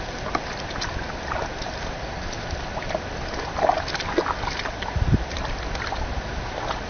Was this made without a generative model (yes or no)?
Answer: yes